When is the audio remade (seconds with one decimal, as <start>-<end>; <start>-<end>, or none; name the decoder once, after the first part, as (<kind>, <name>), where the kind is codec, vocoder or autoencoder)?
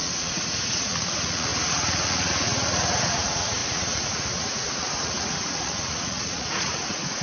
0.0-7.2 (vocoder, Vocos)